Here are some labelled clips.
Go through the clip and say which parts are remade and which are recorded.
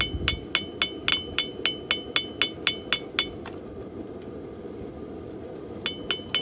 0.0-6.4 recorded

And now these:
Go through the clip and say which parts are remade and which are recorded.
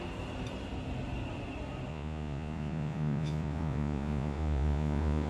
0.0-1.9 recorded; 1.9-5.3 remade